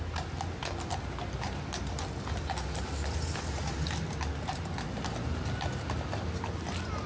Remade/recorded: recorded